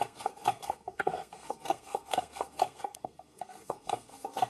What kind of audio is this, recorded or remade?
remade